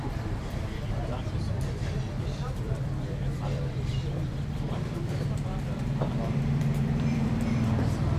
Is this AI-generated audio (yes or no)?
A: yes